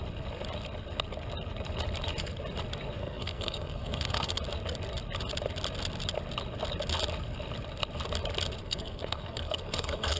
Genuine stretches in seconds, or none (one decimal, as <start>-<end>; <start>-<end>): 0.0-3.0; 4.4-8.6